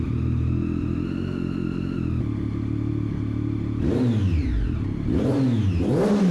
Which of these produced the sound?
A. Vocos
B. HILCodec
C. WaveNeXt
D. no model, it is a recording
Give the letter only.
D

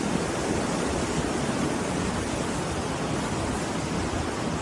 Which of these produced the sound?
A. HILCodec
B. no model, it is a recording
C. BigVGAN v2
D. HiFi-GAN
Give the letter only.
B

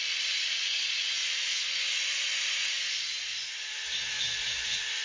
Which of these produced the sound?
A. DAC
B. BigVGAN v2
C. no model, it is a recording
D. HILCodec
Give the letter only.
C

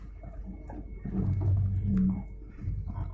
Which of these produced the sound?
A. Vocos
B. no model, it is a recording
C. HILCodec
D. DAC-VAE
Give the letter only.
B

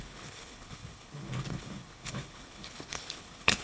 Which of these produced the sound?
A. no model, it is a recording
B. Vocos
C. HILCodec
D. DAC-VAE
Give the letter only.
C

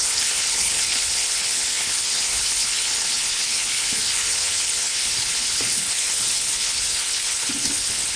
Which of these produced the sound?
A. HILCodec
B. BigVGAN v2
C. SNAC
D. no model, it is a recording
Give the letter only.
A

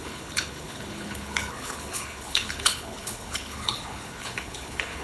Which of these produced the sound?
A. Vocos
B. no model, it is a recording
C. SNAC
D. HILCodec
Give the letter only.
D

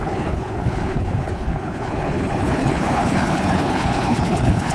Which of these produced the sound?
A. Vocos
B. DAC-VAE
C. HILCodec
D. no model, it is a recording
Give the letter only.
C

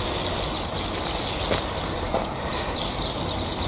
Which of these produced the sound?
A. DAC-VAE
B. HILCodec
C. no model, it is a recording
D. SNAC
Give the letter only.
C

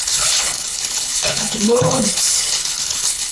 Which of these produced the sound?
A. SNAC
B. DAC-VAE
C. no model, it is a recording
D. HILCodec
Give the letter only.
D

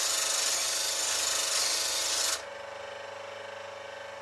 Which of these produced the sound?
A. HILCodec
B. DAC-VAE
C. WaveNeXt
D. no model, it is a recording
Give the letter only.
D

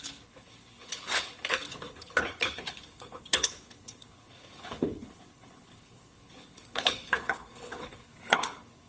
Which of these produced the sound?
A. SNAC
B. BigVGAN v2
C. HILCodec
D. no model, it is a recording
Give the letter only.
C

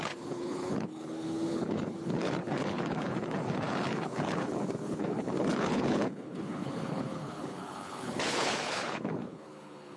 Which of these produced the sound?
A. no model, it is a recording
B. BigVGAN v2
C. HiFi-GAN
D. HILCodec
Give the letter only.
D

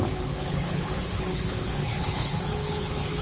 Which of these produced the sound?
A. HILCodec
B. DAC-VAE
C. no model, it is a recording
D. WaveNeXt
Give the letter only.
A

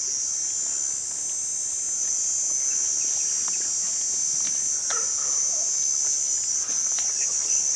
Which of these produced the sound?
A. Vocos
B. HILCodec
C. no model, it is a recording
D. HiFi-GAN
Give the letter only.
C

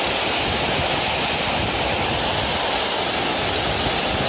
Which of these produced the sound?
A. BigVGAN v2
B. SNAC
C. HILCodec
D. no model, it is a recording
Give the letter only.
D